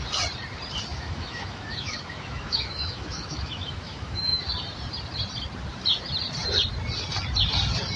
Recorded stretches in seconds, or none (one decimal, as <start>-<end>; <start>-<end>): 0.0-0.9; 4.4-8.0